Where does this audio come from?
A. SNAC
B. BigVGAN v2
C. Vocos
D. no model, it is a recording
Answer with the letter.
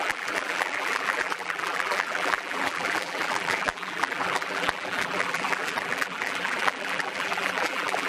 B